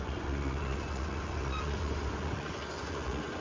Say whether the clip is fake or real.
fake